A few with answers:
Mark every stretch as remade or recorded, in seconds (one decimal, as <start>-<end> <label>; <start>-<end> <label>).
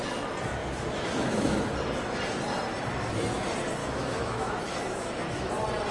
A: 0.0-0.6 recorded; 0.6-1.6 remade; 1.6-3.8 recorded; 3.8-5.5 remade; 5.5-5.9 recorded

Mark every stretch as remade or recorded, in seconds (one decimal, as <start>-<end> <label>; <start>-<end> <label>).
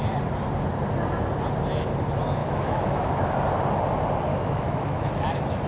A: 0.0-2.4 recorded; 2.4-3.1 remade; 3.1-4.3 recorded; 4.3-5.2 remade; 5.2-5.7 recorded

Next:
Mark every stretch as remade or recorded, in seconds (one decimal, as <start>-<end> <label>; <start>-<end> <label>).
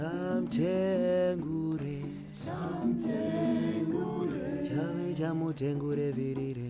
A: 0.0-6.7 recorded